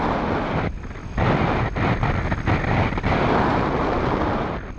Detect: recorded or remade recorded